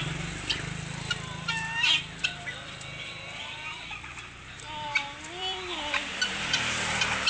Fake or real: fake